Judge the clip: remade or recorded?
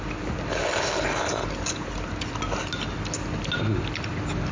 recorded